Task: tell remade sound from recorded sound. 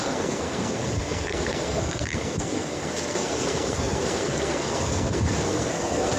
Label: remade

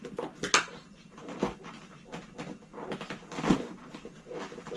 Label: recorded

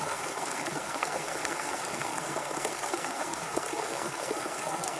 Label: remade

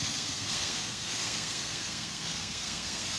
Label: remade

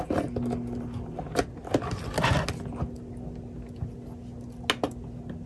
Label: recorded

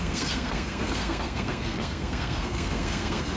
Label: remade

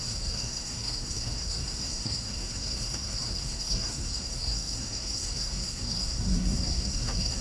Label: remade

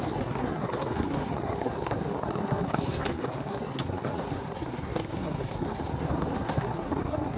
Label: remade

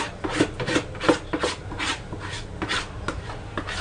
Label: recorded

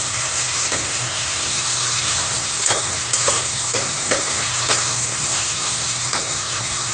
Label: remade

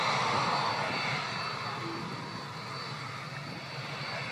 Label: recorded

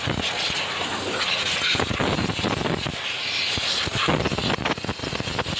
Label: recorded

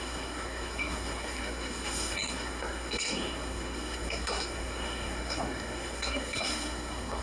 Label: remade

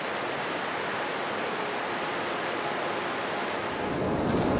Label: recorded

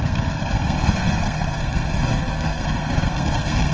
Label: remade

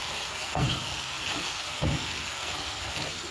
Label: remade